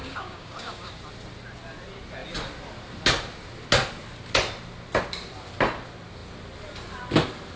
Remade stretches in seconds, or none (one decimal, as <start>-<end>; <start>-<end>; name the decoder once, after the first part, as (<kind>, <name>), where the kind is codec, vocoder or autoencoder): 0.0-0.9 (codec, DAC)